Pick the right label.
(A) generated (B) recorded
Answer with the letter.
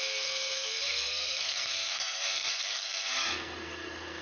A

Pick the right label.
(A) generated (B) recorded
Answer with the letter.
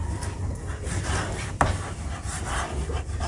A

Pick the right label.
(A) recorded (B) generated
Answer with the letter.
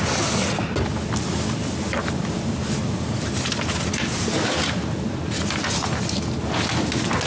A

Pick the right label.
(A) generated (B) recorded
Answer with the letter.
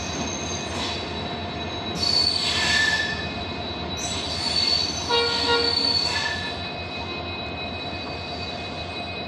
B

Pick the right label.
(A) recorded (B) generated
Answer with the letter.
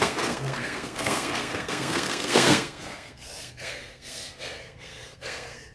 B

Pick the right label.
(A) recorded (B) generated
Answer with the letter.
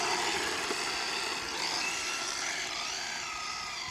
A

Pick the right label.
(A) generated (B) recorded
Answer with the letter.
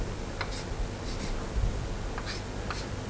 B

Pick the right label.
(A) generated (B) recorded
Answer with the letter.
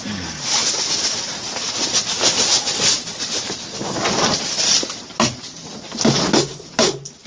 B